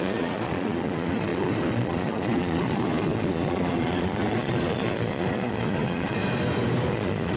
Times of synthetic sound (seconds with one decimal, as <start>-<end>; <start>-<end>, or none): 0.0-6.2; 6.9-7.4